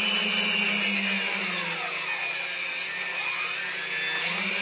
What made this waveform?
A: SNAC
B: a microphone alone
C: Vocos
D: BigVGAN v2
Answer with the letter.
B